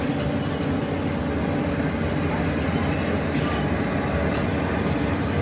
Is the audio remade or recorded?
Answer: recorded